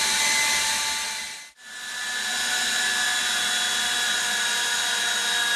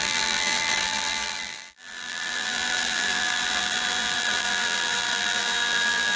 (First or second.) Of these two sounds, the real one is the first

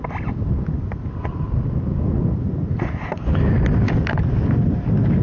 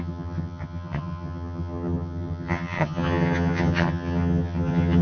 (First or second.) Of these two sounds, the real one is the first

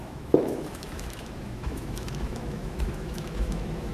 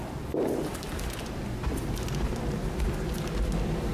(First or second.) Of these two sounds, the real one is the second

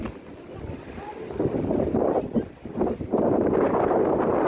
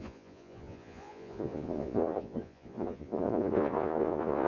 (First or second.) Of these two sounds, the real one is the first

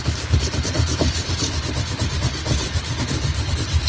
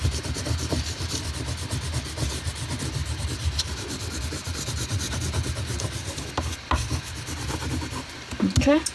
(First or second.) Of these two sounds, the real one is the second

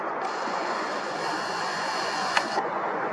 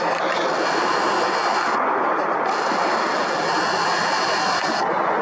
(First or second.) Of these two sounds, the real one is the second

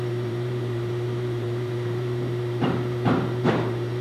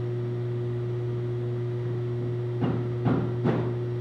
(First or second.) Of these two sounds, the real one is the second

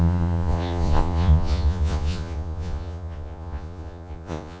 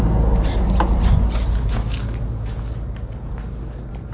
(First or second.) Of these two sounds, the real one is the second